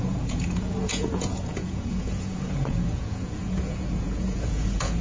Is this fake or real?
fake